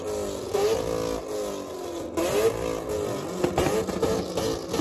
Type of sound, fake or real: real